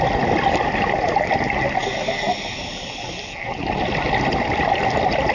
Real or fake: real